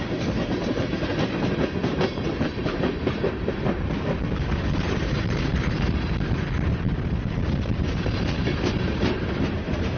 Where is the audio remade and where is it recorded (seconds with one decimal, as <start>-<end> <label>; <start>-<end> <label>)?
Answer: 0.0-1.1 remade; 1.1-1.7 recorded; 1.7-10.0 remade